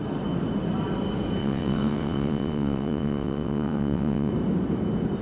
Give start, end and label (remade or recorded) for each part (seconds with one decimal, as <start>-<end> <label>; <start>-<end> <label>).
0.0-1.4 recorded; 1.4-4.3 remade; 4.3-5.2 recorded